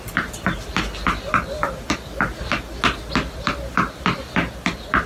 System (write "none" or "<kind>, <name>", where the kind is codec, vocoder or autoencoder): none